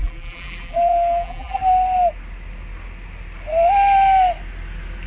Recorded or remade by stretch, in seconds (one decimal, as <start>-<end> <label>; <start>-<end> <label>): 0.0-1.6 remade; 1.6-5.1 recorded